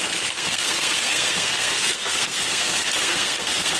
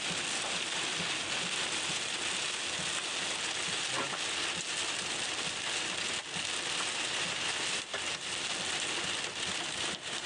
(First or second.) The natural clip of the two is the second